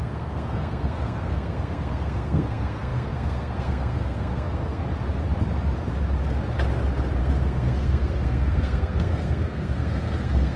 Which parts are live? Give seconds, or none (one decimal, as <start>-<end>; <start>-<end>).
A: 4.8-7.2